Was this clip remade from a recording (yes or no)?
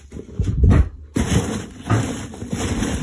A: no